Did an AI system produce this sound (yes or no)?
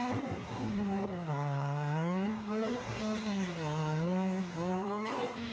yes